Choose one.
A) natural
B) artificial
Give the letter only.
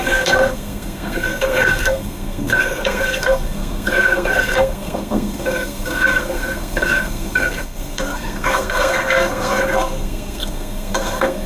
B